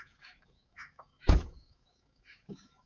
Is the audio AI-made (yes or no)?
yes